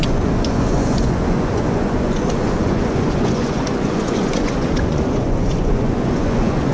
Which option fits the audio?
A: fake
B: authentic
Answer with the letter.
A